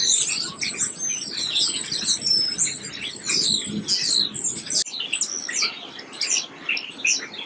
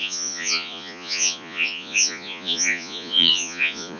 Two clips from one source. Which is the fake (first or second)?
second